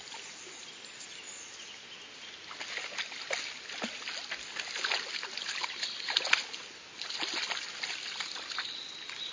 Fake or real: real